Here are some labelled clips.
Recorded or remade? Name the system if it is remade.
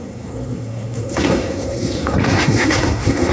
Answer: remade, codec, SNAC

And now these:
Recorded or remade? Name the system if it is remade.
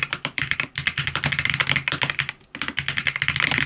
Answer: recorded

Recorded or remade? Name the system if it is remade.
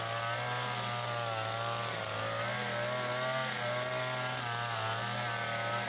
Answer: recorded